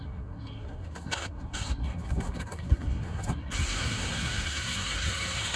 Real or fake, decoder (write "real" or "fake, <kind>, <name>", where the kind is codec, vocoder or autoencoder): fake, codec, SNAC